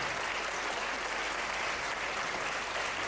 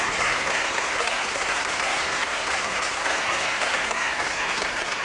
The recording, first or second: first